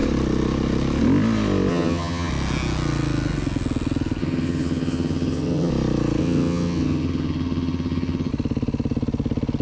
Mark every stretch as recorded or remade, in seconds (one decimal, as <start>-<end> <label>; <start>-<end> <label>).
0.0-1.7 recorded; 1.7-2.3 remade; 2.3-4.2 recorded; 4.2-5.7 remade; 5.7-6.2 recorded; 6.2-8.3 remade; 8.3-9.6 recorded